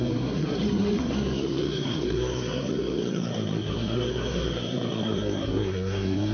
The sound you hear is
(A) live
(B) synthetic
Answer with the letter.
B